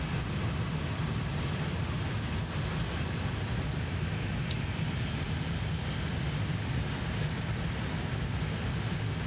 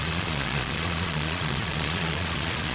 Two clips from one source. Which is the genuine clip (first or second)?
first